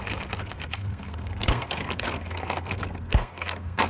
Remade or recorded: remade